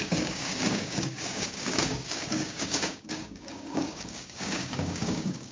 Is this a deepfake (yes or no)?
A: yes